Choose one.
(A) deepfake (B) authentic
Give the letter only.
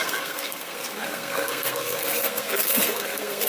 A